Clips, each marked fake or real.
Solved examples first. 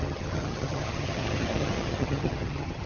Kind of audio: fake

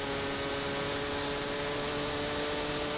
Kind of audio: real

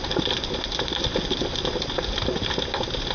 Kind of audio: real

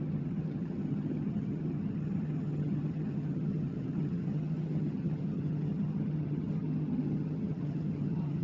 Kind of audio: fake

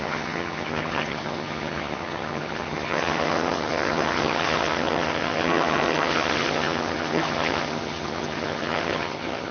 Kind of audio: fake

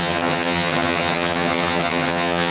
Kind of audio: fake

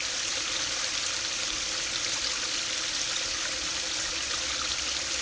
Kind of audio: real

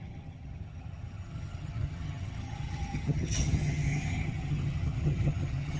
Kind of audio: fake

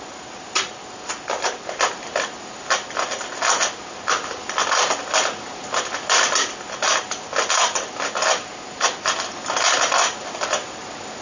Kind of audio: real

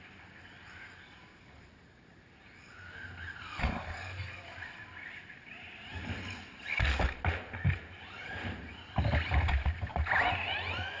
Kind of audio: real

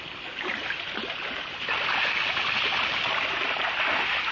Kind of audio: real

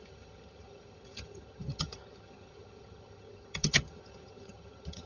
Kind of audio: fake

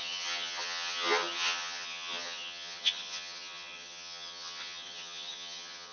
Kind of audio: fake